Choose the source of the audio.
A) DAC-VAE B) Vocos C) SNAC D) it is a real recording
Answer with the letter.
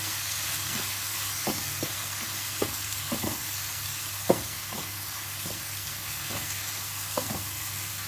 C